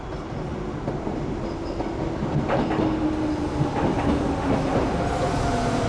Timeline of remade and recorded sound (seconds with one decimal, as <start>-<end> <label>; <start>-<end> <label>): 0.0-5.9 recorded